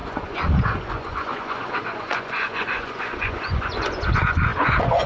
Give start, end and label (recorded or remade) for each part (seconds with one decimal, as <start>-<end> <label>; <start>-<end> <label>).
0.0-5.1 remade